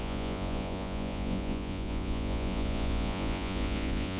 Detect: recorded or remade remade